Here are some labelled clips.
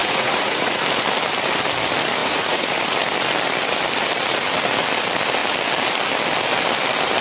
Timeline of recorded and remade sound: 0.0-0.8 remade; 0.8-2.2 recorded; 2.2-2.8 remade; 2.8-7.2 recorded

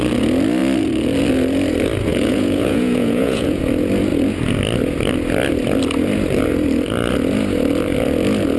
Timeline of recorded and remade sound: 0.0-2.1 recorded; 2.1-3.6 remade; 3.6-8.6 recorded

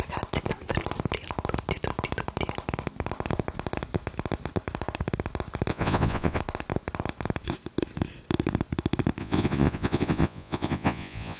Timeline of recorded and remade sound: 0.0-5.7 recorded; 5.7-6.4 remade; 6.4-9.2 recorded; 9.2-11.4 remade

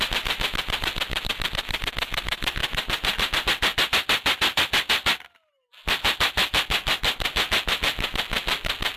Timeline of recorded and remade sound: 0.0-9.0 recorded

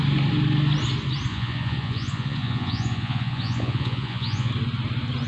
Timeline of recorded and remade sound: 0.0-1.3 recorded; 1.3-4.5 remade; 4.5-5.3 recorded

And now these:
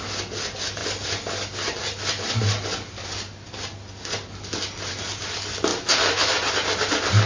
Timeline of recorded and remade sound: 0.0-7.3 recorded

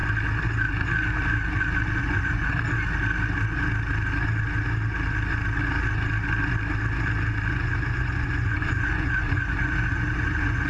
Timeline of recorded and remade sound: 0.0-2.0 recorded; 2.0-2.5 remade; 2.5-7.5 recorded; 7.5-10.7 remade